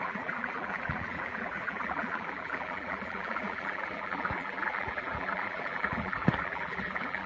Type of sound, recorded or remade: remade